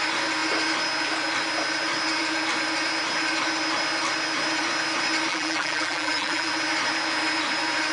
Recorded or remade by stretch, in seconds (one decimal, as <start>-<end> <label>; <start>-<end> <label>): 0.0-5.3 recorded; 5.3-6.5 remade; 6.5-7.9 recorded